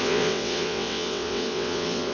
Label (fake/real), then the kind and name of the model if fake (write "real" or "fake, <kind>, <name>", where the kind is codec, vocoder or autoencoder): fake, vocoder, WaveNeXt